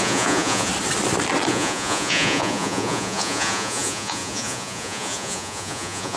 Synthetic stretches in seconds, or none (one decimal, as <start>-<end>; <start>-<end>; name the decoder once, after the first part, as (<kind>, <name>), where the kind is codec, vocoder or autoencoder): 0.0-0.7 (vocoder, Vocos); 1.5-6.2